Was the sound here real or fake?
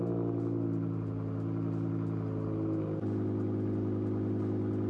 real